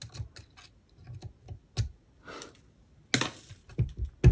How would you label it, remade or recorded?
recorded